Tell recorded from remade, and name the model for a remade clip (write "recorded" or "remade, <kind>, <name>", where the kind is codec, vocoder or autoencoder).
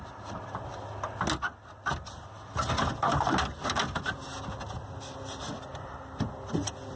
recorded